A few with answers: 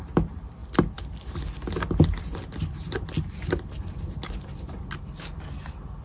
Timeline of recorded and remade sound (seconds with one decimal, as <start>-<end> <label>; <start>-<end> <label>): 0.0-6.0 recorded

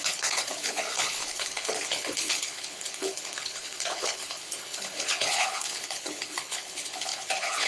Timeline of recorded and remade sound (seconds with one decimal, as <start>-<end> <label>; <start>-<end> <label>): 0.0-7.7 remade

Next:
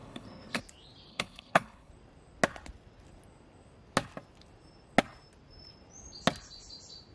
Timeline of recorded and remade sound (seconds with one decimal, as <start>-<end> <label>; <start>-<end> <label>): 0.0-0.6 remade; 0.6-1.1 recorded; 1.1-1.9 remade; 1.9-7.1 recorded

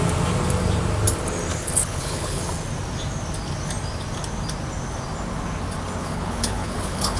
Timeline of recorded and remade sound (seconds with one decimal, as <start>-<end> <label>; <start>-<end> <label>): 0.0-1.5 recorded; 1.5-2.4 remade; 2.4-6.0 recorded; 6.0-7.2 remade